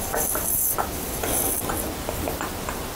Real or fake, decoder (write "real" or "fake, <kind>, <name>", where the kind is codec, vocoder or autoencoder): real